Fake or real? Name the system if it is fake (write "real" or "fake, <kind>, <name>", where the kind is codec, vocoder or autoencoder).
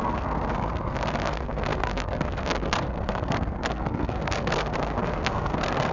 fake, codec, SNAC